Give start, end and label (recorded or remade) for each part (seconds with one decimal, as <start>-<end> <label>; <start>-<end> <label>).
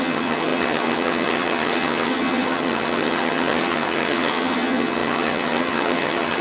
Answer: 0.0-6.4 remade